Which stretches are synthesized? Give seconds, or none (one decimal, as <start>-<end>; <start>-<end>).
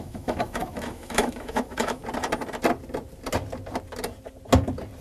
0.0-2.0